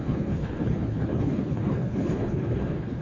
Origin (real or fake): fake